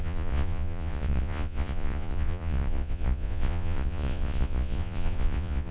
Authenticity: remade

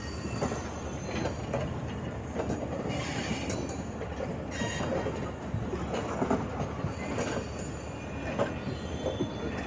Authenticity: recorded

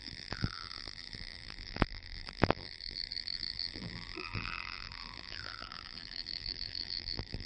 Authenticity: remade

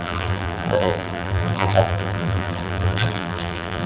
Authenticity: remade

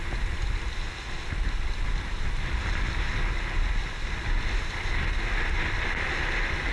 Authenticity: recorded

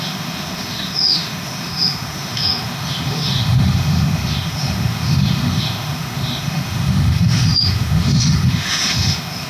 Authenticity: remade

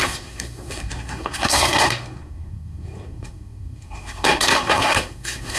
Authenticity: remade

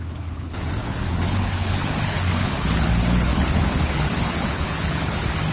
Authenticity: remade